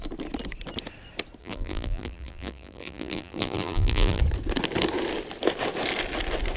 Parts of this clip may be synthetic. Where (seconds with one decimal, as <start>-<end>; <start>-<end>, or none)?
1.4-4.2